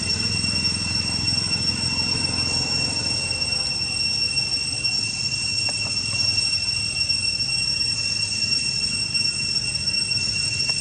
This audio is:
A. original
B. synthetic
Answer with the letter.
A